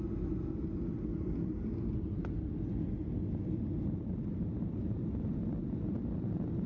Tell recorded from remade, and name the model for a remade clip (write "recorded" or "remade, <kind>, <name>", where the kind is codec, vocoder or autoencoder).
recorded